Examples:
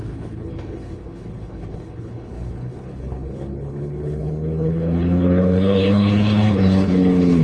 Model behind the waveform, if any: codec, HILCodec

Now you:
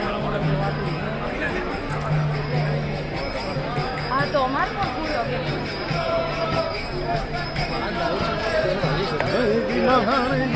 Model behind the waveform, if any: none